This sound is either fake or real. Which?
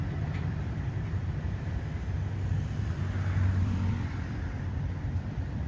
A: fake